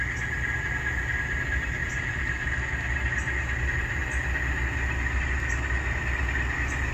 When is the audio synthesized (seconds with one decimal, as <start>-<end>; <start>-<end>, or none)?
none